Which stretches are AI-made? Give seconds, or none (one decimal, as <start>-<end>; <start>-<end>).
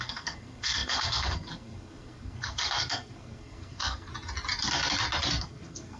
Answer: 0.0-4.1; 5.4-6.0